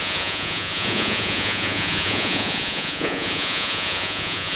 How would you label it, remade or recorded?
remade